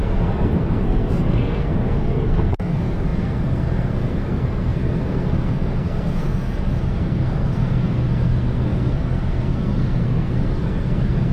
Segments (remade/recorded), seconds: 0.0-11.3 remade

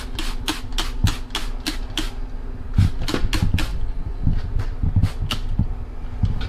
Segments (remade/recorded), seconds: 0.0-6.5 recorded

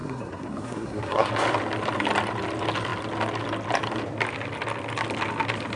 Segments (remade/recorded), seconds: 0.0-1.3 remade; 1.3-5.8 recorded

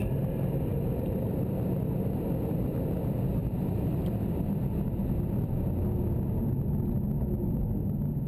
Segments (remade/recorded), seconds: 0.0-8.3 recorded

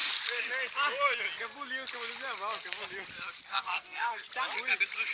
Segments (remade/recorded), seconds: 0.0-3.5 recorded; 3.5-4.2 remade; 4.2-5.1 recorded

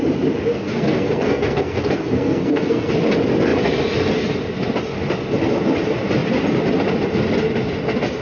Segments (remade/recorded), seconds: 0.0-0.5 recorded; 0.5-2.9 remade; 2.9-8.2 recorded

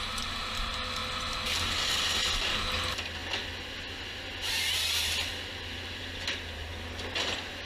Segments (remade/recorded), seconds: 0.0-7.7 recorded

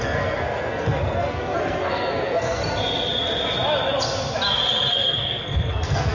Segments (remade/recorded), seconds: 0.0-2.6 remade; 2.6-4.9 recorded; 4.9-6.1 remade